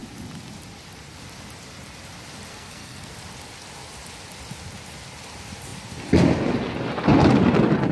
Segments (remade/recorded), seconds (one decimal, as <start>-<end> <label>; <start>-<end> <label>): 0.0-2.5 recorded; 2.5-3.1 remade; 3.1-7.9 recorded